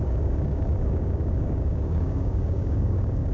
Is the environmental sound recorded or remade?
remade